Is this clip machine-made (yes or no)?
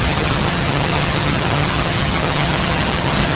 yes